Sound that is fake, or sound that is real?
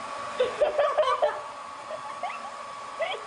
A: real